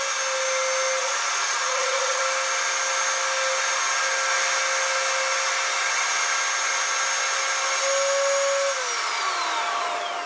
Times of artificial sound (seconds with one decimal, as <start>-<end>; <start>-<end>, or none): 1.0-2.2